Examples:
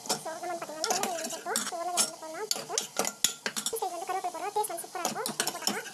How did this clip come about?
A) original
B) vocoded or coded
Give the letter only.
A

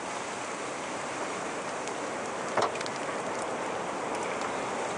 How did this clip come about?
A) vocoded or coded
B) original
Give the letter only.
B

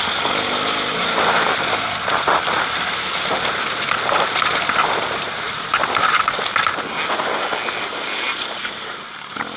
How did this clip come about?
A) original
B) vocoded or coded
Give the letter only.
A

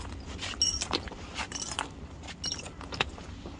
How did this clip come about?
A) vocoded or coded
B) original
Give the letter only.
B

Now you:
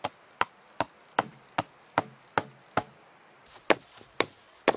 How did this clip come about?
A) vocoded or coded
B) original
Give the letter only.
B